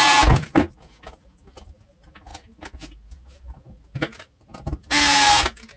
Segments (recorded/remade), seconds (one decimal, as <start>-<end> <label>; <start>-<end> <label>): 0.0-5.8 recorded